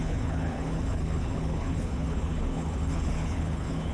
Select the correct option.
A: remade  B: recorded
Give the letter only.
A